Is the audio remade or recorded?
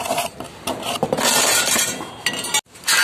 recorded